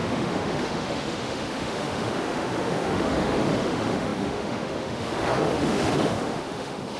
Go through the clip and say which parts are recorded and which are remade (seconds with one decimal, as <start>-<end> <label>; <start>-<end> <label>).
0.0-7.0 remade